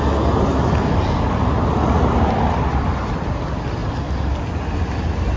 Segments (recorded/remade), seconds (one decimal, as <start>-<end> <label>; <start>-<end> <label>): 0.0-5.4 recorded

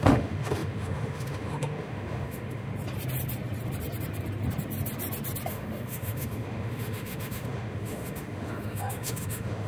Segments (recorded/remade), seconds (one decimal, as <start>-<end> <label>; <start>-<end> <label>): 0.0-2.7 remade; 2.7-5.5 recorded; 5.5-9.7 remade

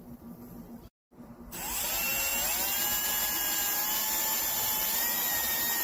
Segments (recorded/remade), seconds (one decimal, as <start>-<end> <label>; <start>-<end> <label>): 0.0-2.3 remade; 2.3-4.6 recorded; 4.6-5.8 remade

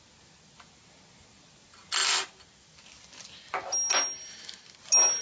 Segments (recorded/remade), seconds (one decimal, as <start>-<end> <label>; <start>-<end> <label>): 0.0-5.2 recorded